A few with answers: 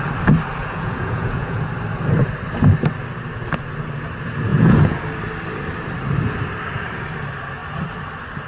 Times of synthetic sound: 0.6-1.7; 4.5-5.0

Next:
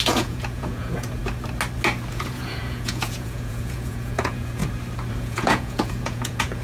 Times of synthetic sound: 0.0-1.2; 2.1-4.6; 5.1-6.6

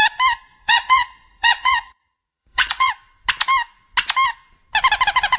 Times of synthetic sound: 0.5-2.9